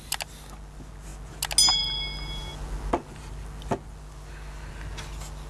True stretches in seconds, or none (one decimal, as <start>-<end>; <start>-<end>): 0.0-5.5